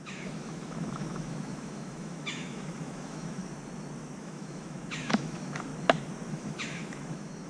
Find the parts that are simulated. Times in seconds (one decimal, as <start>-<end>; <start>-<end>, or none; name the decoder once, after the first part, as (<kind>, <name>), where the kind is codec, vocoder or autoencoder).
0.0-3.4 (autoencoder, DAC-VAE); 4.2-5.7; 6.3-7.5